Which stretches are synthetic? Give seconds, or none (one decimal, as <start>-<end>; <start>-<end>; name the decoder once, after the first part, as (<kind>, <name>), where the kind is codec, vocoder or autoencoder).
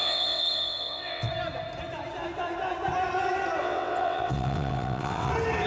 0.0-1.3 (vocoder, WaveNeXt); 3.6-5.3